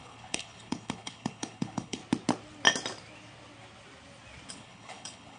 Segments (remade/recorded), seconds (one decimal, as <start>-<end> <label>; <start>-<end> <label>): 0.0-2.0 remade; 2.0-4.5 recorded; 4.5-5.4 remade